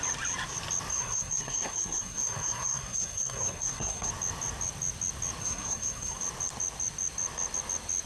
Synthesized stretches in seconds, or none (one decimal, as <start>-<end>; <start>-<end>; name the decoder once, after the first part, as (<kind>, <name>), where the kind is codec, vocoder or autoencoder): 0.9-4.1 (codec, SNAC); 5.4-6.2